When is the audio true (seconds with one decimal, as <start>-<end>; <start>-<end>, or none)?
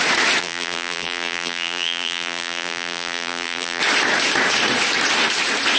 0.0-0.4; 3.8-5.8